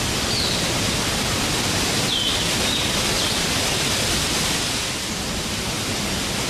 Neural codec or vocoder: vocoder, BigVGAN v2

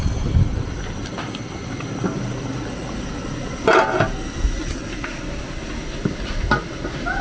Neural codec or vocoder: none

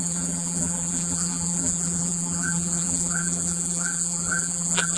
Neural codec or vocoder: vocoder, BigVGAN v2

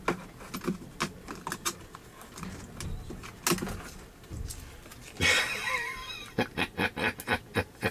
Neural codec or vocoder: none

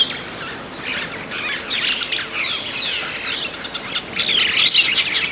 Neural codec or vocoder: none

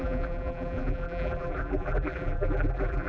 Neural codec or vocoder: vocoder, BigVGAN v2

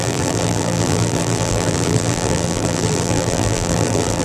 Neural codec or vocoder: vocoder, BigVGAN v2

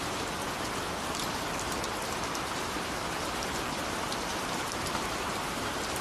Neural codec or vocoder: vocoder, BigVGAN v2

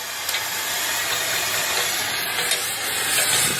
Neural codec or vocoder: none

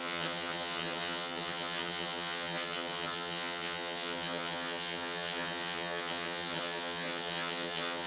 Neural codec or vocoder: vocoder, HiFi-GAN